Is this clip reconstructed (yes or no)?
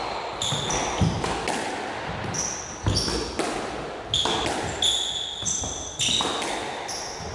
no